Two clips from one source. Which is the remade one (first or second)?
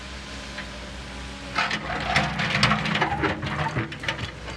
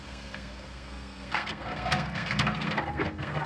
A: second